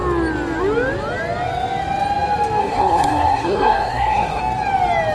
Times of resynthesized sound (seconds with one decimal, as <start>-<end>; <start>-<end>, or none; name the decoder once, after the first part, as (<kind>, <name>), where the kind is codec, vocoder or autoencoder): 2.6-4.4 (codec, SNAC)